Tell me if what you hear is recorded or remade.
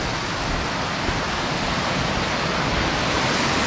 recorded